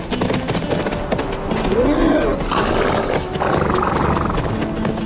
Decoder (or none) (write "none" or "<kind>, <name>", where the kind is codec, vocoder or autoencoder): none